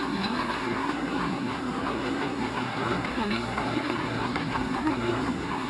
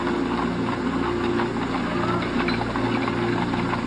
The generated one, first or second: first